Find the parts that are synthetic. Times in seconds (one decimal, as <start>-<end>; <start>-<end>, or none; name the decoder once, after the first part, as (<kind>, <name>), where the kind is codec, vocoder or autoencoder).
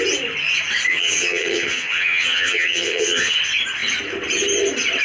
0.9-3.4 (vocoder, HiFi-GAN)